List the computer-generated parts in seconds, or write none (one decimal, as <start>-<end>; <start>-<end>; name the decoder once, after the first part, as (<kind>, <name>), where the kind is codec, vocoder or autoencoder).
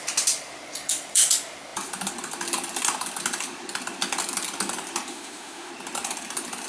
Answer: 5.1-5.7 (autoencoder, DAC-VAE)